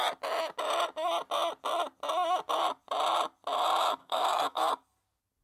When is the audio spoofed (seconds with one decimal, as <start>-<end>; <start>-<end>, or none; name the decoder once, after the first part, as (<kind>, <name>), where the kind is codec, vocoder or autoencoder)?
4.0-4.7 (codec, SNAC)